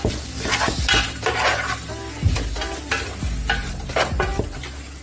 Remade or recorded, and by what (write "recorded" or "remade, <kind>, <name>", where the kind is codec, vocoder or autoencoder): recorded